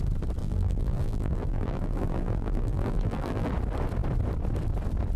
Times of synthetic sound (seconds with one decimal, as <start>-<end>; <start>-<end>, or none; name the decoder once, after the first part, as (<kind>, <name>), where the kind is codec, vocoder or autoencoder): 0.4-3.5 (vocoder, BigVGAN v2)